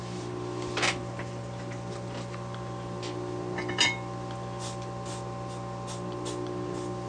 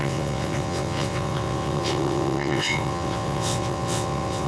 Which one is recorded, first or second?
first